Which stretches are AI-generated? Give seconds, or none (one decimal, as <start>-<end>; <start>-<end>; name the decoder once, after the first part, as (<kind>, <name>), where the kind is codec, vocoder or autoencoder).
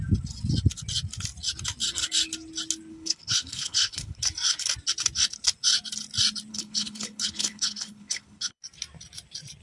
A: 2.9-4.2 (codec, HILCodec); 6.5-8.6